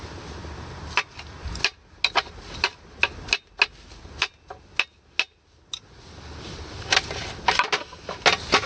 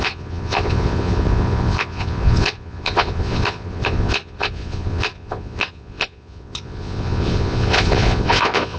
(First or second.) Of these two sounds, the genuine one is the first